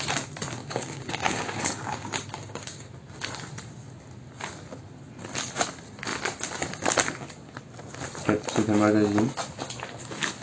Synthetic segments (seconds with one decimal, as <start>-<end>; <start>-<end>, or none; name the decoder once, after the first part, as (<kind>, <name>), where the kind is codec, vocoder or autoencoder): 0.6-2.9 (codec, DAC)